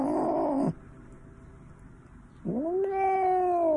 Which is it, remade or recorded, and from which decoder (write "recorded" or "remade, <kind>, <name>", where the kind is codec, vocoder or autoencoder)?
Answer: recorded